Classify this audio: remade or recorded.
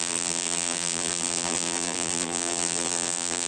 remade